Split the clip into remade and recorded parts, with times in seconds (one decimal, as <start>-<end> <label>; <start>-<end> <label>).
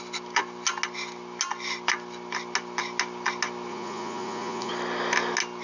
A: 0.0-3.7 recorded; 3.7-4.7 remade; 4.7-5.6 recorded